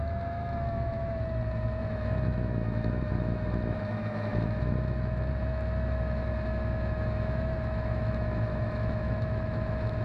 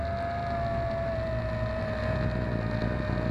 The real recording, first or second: second